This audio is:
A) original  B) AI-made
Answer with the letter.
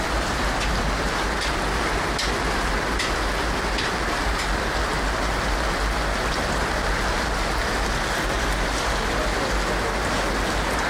A